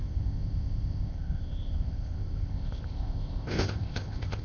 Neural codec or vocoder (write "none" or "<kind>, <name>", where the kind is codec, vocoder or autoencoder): codec, ZipCodec